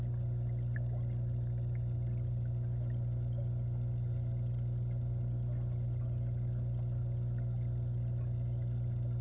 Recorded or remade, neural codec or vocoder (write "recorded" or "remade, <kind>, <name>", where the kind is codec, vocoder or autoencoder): recorded